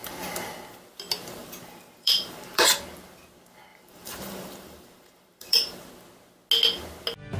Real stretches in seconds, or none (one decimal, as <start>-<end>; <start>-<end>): 0.0-1.4; 2.6-3.7; 5.9-7.4